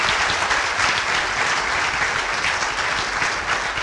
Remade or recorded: recorded